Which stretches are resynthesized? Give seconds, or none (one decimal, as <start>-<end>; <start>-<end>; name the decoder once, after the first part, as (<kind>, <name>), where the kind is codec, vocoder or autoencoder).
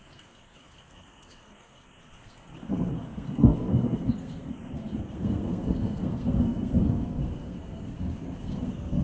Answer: 0.0-9.0 (codec, SNAC)